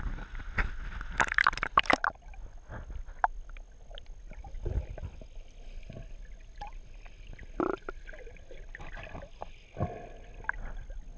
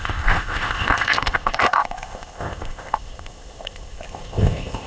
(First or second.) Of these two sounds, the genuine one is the first